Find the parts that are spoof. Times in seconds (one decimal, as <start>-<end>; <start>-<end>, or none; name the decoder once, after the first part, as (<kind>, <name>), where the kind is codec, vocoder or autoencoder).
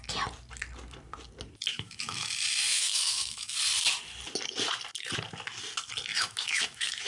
1.7-2.3 (autoencoder, DAC-VAE); 2.7-3.6; 6.1-7.1